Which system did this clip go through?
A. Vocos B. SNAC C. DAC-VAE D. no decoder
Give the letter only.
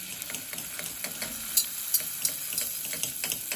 D